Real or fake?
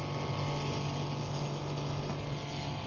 real